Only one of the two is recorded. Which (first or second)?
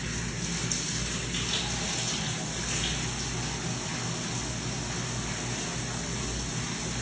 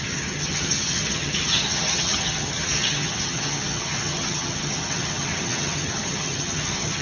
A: first